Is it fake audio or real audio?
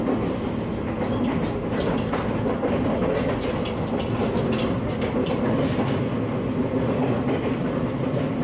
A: real